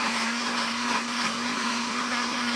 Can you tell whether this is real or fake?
fake